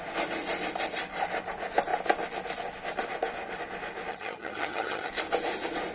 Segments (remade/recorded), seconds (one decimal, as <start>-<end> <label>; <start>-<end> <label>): 0.0-4.1 recorded; 4.1-5.1 remade; 5.1-5.9 recorded